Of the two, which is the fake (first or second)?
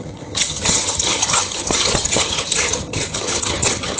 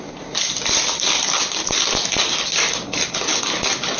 first